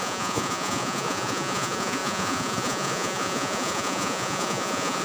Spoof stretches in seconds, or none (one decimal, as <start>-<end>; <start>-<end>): 0.0-5.0